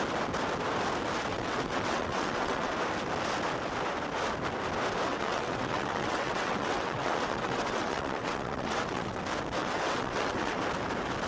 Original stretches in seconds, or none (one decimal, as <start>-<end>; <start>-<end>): 0.0-1.3; 2.7-5.1; 9.2-9.6; 10.6-11.3